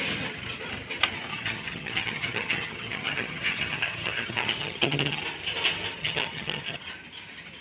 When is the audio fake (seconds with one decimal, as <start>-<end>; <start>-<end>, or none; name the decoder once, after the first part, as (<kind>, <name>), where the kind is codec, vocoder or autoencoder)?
1.3-5.2 (vocoder, HiFi-GAN); 6.0-6.9